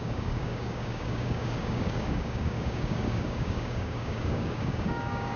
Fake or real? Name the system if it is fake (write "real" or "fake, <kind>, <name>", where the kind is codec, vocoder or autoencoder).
fake, codec, DAC